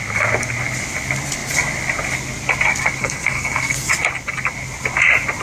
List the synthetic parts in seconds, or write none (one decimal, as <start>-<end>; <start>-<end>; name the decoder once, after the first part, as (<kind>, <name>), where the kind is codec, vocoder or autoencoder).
3.0-3.9 (codec, SNAC)